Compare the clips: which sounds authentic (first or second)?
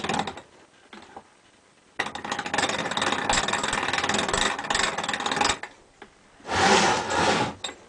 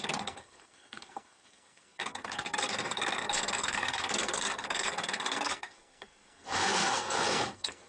first